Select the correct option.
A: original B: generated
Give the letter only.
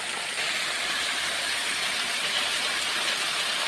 A